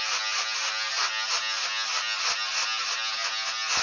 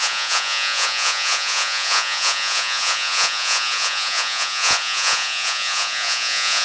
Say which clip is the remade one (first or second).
second